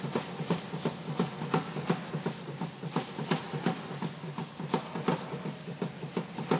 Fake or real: real